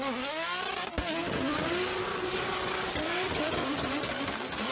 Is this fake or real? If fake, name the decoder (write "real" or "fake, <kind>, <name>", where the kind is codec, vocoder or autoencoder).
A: real